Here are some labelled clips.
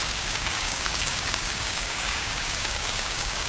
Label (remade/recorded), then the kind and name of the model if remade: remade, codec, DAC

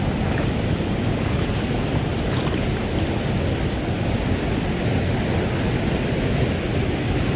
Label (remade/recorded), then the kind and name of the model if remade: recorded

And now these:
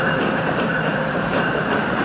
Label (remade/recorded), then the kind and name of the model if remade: remade, vocoder, BigVGAN v2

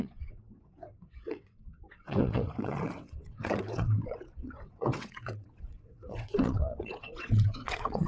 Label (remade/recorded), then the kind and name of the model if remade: remade, vocoder, WaveNeXt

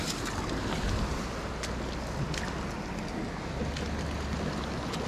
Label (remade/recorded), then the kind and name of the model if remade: recorded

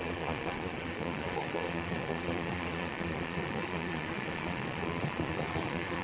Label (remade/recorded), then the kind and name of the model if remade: remade, vocoder, Vocos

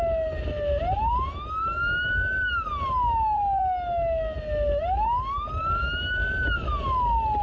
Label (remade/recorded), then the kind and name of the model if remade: recorded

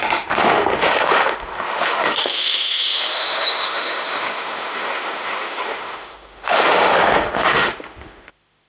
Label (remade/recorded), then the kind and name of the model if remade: remade, autoencoder, DAC-VAE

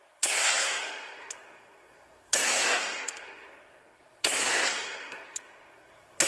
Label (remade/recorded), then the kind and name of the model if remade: remade, codec, SNAC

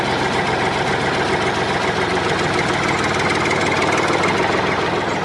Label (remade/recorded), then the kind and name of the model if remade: recorded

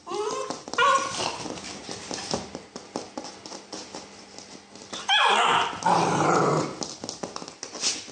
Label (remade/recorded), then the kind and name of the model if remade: recorded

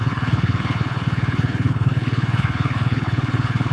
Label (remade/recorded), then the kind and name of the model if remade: remade, codec, HILCodec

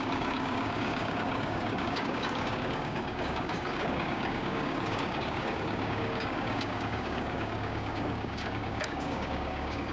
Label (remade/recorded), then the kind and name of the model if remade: remade, codec, DAC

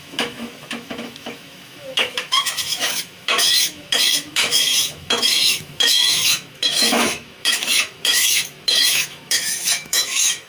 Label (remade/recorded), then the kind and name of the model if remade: remade, autoencoder, DAC-VAE